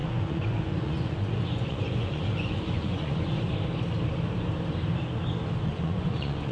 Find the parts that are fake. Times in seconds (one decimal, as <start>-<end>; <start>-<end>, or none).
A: 0.0-3.5; 5.7-6.5